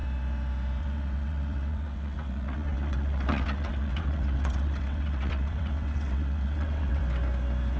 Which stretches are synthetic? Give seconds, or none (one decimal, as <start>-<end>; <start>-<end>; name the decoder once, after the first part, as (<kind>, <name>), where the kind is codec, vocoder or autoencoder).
0.8-7.0 (vocoder, WaveNeXt)